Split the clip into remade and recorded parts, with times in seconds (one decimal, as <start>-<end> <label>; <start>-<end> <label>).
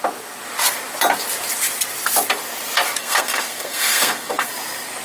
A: 0.0-3.0 recorded; 3.0-4.5 remade; 4.5-5.0 recorded